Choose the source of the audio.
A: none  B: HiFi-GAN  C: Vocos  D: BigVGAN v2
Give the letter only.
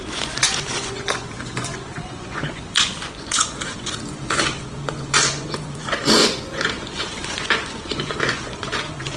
C